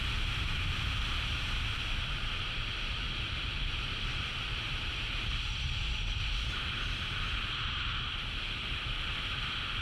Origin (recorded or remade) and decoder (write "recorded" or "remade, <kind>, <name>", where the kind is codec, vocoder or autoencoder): remade, vocoder, BigVGAN v2